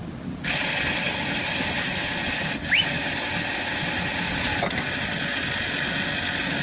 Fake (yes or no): no